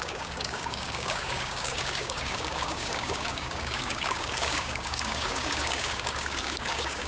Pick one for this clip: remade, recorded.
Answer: remade